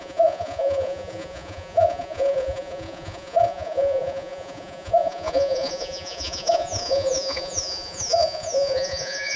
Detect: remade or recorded remade